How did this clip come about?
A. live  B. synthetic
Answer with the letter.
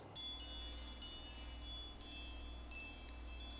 A